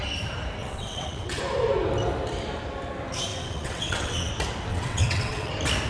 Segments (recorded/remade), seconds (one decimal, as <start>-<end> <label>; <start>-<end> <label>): 0.0-0.6 recorded; 0.6-1.4 remade; 1.4-3.3 recorded; 3.3-4.3 remade; 4.3-4.7 recorded; 4.7-5.5 remade; 5.5-5.9 recorded